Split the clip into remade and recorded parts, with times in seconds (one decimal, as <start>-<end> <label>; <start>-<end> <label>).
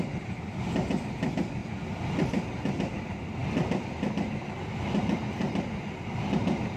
0.0-1.6 recorded; 1.6-3.0 remade; 3.0-3.4 recorded; 3.4-4.3 remade; 4.3-6.8 recorded